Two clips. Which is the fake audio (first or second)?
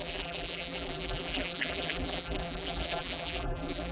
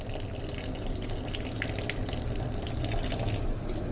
first